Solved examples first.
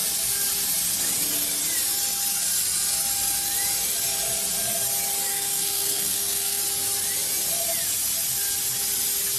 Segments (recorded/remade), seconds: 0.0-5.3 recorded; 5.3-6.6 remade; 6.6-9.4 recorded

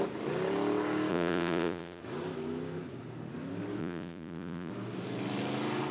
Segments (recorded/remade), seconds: 0.0-1.1 recorded; 1.1-2.0 remade; 2.0-3.8 recorded; 3.8-4.7 remade; 4.7-5.9 recorded

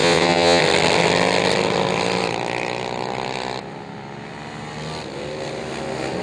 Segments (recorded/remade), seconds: 0.0-0.6 remade; 0.6-6.2 recorded